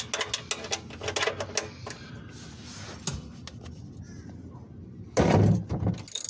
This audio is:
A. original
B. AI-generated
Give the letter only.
A